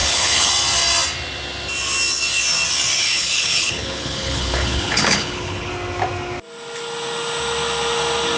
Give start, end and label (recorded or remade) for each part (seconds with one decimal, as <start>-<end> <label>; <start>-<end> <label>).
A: 0.0-0.5 remade; 0.5-3.0 recorded; 3.0-5.7 remade; 5.7-8.4 recorded